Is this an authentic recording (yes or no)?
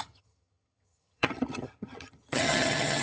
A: no